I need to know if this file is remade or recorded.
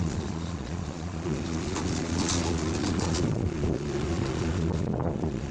remade